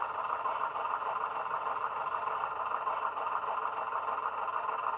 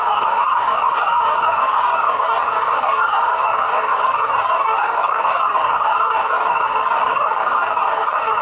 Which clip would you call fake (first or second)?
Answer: second